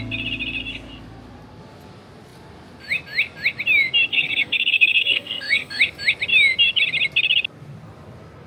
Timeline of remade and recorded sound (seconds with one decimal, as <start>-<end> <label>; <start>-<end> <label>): 0.0-4.1 recorded; 4.1-5.8 remade; 5.8-8.5 recorded